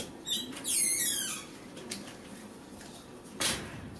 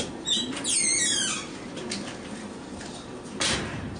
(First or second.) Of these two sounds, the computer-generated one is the first